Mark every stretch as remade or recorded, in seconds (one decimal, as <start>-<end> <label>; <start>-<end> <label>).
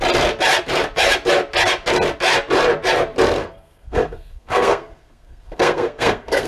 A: 0.0-3.4 recorded; 3.4-6.5 remade